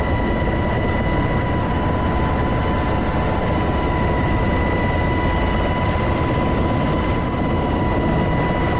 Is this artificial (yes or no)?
no